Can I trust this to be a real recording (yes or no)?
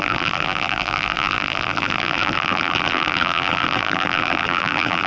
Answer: no